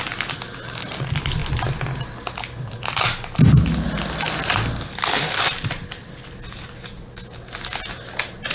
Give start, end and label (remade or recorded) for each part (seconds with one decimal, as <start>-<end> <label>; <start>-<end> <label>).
0.0-8.5 recorded

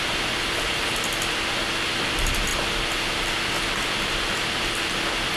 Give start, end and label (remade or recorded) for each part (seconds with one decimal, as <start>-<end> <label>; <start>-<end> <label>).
0.0-5.4 recorded

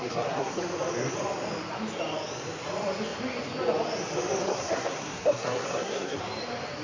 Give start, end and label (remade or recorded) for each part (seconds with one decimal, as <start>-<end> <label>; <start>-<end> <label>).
0.0-0.6 remade; 0.6-4.4 recorded; 4.4-6.2 remade; 6.2-6.8 recorded

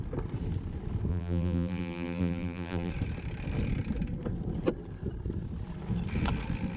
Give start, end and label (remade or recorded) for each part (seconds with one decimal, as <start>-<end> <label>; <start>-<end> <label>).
0.0-1.1 recorded; 1.1-2.9 remade; 2.9-6.8 recorded

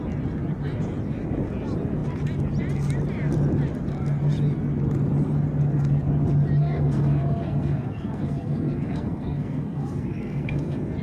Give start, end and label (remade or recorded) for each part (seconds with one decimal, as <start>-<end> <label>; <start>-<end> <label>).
0.0-6.6 recorded; 6.6-11.0 remade

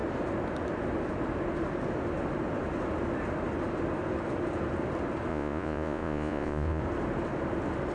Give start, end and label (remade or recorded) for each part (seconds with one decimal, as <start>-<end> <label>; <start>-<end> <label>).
0.0-5.3 recorded; 5.3-6.8 remade; 6.8-7.9 recorded

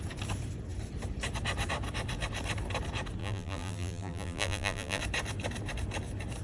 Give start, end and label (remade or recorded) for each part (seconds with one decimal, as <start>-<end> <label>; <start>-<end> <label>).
0.0-3.2 recorded; 3.2-5.0 remade; 5.0-6.4 recorded

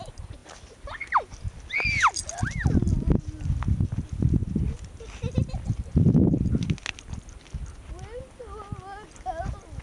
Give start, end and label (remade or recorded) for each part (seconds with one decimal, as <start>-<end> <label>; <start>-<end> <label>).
0.0-9.8 recorded